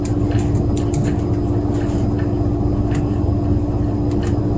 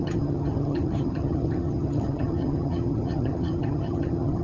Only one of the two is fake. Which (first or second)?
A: second